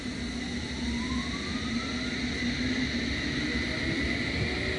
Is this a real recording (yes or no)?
yes